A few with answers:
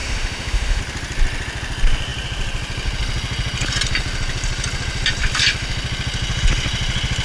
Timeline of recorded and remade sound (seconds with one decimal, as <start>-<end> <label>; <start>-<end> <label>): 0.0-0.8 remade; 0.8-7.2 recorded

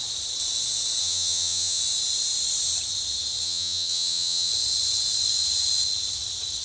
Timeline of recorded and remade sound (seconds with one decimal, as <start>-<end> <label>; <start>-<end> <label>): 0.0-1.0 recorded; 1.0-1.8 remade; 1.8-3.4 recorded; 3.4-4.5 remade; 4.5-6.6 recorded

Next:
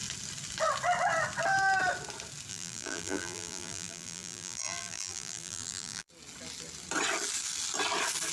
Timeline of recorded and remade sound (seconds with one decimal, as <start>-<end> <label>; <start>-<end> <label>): 0.0-2.5 recorded; 2.5-6.1 remade; 6.1-8.3 recorded

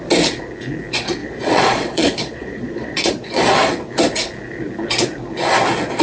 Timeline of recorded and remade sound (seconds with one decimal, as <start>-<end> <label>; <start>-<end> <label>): 0.0-1.2 recorded; 1.2-3.7 remade; 3.7-6.0 recorded

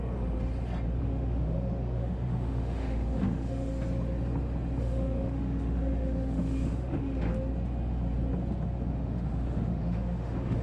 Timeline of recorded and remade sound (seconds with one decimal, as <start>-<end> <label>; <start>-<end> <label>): 0.0-1.0 recorded; 1.0-3.7 remade; 3.7-4.8 recorded; 4.8-7.3 remade; 7.3-8.9 recorded; 8.9-10.6 remade

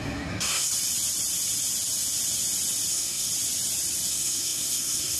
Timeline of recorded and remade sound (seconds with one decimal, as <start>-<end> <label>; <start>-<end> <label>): 0.0-0.7 remade; 0.7-2.9 recorded; 2.9-3.3 remade; 3.3-4.1 recorded; 4.1-5.2 remade

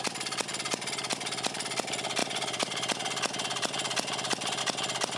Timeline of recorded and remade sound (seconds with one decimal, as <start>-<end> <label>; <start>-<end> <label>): 0.0-5.2 recorded

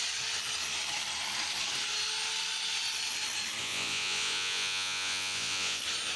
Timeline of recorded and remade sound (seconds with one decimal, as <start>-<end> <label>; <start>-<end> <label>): 0.0-3.6 recorded; 3.6-5.8 remade; 5.8-6.2 recorded